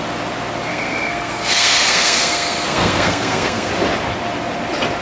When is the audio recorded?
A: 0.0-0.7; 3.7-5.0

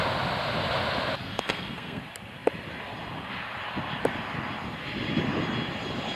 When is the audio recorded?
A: 0.0-1.3; 2.0-6.2

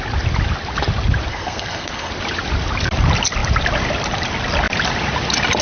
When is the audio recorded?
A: 0.0-1.3; 2.1-5.6

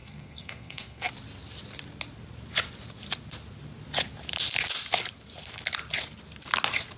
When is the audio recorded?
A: 1.1-7.0

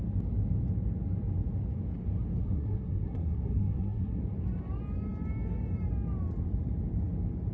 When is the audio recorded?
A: 0.0-2.4; 4.2-7.5

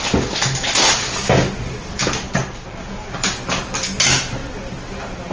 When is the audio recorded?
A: 0.0-5.3